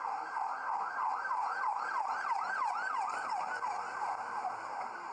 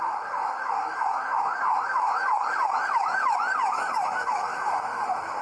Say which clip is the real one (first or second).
first